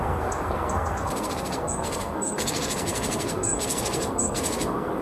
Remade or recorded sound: remade